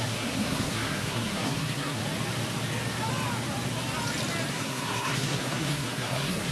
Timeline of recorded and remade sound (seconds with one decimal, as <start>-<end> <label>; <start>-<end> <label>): 0.0-2.0 remade; 2.0-4.5 recorded; 4.5-6.5 remade